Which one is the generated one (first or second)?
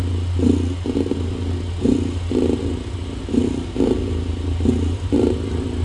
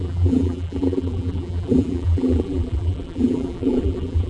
second